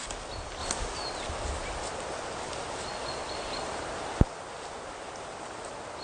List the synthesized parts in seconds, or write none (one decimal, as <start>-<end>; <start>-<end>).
none